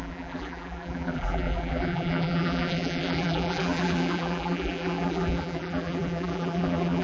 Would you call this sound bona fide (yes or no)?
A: no